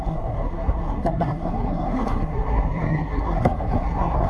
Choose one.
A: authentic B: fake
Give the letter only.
B